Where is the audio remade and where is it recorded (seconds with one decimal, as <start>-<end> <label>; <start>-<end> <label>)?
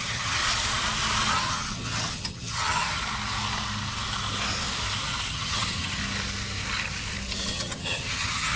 0.0-0.4 remade; 0.4-1.3 recorded; 1.3-3.0 remade; 3.0-5.3 recorded; 5.3-6.0 remade; 6.0-7.5 recorded; 7.5-8.6 remade